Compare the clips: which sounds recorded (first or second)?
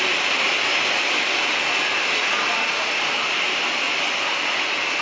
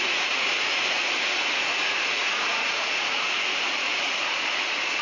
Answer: first